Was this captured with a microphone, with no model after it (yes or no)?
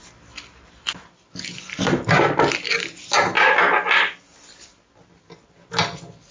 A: yes